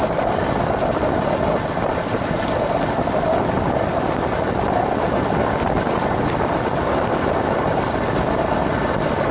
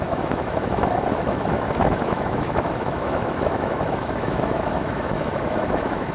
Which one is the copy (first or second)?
second